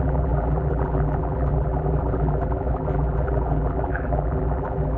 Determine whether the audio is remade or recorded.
remade